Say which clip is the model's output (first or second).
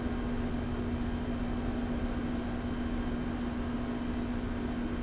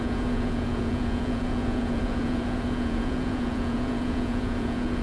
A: second